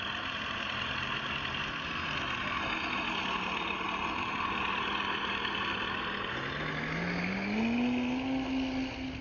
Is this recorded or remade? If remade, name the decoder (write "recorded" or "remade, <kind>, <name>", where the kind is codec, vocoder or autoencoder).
recorded